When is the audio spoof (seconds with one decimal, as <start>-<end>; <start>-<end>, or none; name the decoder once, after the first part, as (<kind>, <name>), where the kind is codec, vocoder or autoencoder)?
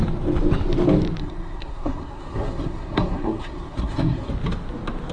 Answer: 1.2-4.3 (codec, SNAC)